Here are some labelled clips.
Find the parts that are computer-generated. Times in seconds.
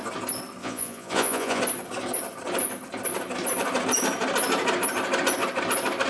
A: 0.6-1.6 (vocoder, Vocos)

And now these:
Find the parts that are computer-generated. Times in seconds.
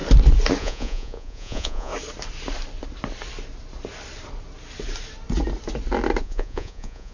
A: 0.6-1.9 (vocoder, Vocos); 6.2-7.1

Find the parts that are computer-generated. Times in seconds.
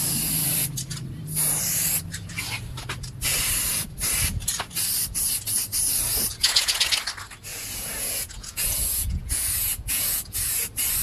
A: 6.3-6.9 (vocoder, Vocos); 7.5-10.6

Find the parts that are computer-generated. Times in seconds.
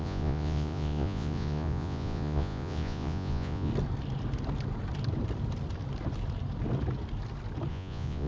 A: 0.0-3.7 (vocoder, Vocos); 7.7-8.3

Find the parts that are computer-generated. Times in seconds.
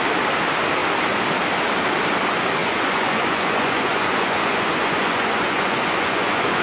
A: 2.6-6.6 (vocoder, Vocos)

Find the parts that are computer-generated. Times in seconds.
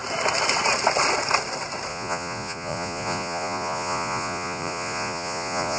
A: 1.9-5.8 (vocoder, Vocos)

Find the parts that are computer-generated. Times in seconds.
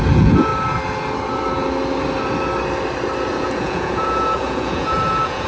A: 0.0-0.5 (vocoder, Vocos); 3.3-5.5